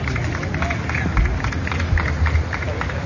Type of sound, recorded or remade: recorded